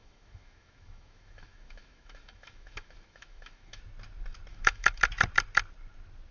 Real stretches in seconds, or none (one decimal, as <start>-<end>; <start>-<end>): 3.8-4.5; 5.0-6.3